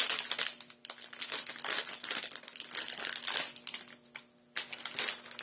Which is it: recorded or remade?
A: recorded